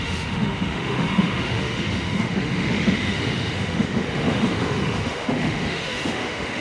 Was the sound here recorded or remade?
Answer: remade